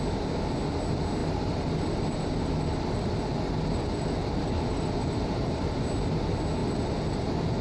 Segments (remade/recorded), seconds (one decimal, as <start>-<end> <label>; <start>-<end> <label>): 0.0-1.2 recorded; 1.2-5.8 remade; 5.8-6.6 recorded; 6.6-7.6 remade